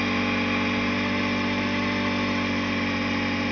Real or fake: real